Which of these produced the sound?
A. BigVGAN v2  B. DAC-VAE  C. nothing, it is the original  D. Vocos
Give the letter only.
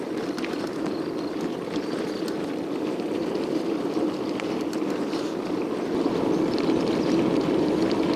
C